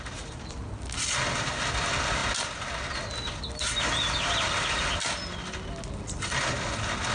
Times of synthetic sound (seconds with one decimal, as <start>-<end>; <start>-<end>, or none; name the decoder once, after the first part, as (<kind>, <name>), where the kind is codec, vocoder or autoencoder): none